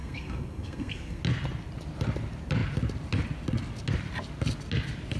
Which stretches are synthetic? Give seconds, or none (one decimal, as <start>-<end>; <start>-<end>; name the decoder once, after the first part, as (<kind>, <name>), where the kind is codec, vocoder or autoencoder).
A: 0.0-1.2 (codec, SNAC)